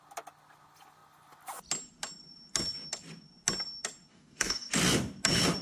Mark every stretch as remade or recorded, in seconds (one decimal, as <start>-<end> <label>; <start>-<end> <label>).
0.0-4.1 recorded; 4.1-4.7 remade; 4.7-5.6 recorded